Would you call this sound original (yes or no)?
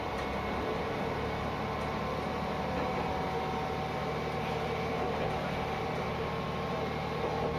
yes